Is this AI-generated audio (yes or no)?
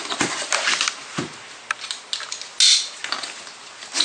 no